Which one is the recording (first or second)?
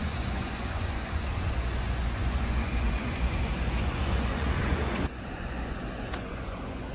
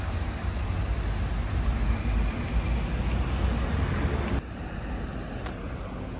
second